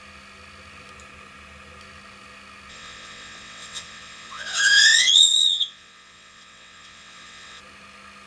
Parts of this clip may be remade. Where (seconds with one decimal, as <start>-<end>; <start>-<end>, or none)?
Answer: 2.7-7.6